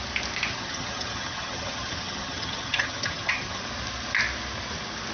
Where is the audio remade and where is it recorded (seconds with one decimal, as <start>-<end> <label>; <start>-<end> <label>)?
0.0-0.5 recorded; 0.5-3.6 remade; 3.6-5.1 recorded